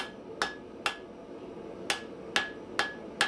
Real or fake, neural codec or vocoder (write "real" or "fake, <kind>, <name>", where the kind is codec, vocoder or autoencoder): real